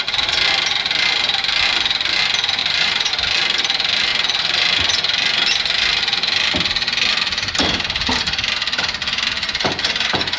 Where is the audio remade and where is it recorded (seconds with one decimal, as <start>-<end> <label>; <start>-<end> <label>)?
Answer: 0.0-2.6 recorded; 2.6-3.1 remade; 3.1-10.4 recorded